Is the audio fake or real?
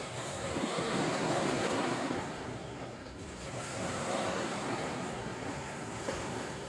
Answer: fake